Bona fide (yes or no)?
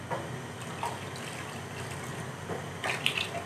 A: yes